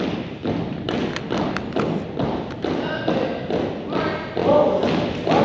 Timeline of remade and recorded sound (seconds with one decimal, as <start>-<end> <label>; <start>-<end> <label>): 0.0-5.4 recorded